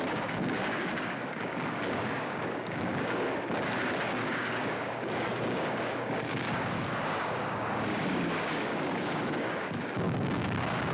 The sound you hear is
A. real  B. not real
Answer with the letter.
B